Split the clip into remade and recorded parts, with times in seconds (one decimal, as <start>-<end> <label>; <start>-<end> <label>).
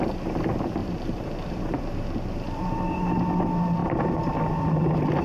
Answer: 0.0-0.8 recorded; 0.8-1.8 remade; 1.8-5.2 recorded